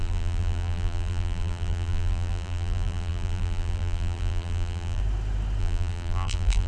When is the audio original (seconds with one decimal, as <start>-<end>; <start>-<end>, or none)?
5.0-5.6